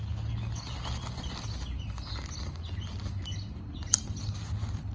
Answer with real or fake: real